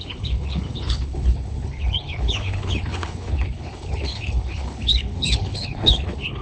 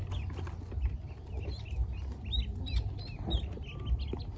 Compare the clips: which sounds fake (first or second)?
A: first